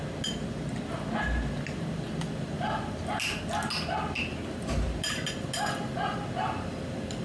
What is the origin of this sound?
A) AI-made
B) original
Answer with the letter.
B